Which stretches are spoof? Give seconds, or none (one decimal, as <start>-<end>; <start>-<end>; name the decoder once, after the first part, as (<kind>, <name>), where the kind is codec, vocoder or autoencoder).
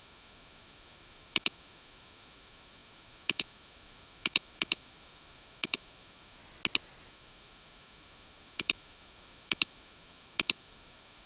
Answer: 0.0-6.4 (autoencoder, DAC-VAE); 7.1-11.3